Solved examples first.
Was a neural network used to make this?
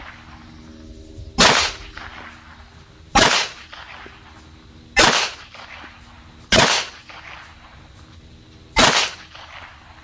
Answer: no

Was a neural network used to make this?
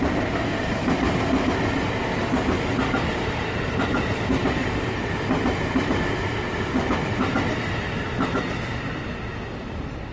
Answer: no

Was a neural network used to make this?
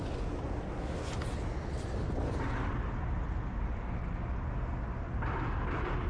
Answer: no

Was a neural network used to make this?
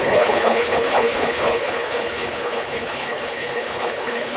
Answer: yes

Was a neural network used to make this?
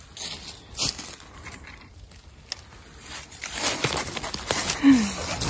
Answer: no